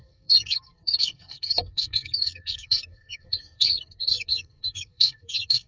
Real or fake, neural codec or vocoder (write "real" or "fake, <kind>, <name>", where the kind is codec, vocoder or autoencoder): fake, codec, SNAC